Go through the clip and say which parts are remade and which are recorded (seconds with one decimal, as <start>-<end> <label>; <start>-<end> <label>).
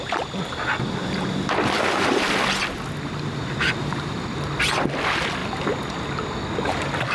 0.0-7.1 recorded